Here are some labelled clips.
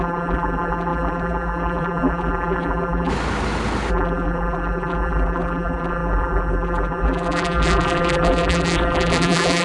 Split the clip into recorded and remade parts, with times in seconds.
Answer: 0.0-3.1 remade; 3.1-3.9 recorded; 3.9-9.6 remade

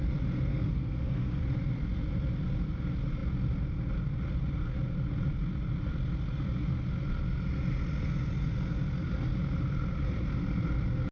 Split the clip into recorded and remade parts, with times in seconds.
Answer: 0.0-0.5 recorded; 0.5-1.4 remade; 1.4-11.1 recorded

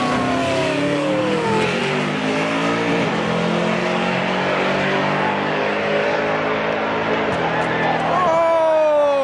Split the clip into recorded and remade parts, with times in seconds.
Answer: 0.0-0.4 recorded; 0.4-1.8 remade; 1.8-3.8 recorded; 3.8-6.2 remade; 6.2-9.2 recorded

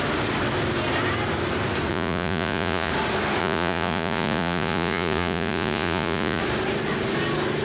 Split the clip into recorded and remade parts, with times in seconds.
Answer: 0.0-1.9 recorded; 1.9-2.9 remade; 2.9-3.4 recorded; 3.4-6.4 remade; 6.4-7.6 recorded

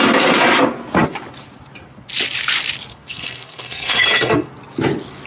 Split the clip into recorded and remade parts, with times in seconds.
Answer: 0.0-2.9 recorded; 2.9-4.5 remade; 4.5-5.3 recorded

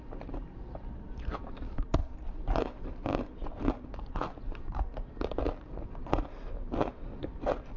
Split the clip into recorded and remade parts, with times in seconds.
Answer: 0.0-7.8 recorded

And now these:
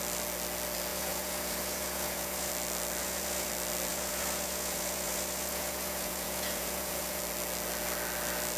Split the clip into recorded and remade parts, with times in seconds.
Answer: 0.0-0.9 recorded; 0.9-2.5 remade; 2.5-3.0 recorded; 3.0-3.5 remade; 3.5-3.9 recorded; 3.9-7.2 remade; 7.2-8.6 recorded

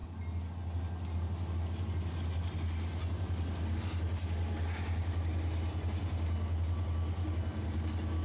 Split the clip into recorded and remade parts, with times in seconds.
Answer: 0.0-8.2 recorded